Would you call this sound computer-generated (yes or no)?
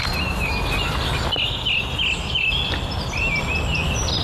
no